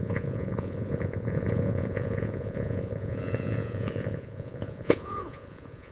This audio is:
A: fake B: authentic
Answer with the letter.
A